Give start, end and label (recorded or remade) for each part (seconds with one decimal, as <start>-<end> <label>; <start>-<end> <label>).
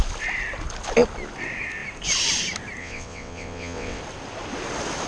0.0-2.8 recorded; 2.8-4.0 remade; 4.0-5.1 recorded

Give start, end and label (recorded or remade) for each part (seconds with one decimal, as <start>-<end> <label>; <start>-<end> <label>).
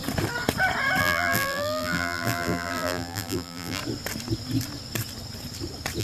0.0-1.0 recorded; 1.0-3.8 remade; 3.8-6.0 recorded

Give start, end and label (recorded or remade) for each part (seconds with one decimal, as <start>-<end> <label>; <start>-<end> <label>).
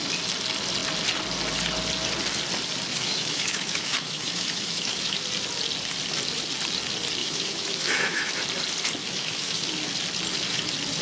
0.0-2.9 recorded; 2.9-5.2 remade; 5.2-7.2 recorded; 7.2-8.3 remade; 8.3-9.0 recorded; 9.0-9.7 remade; 9.7-11.0 recorded